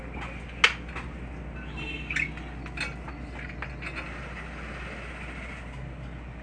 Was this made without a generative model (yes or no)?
yes